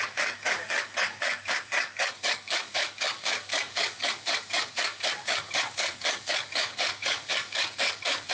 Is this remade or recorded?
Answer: remade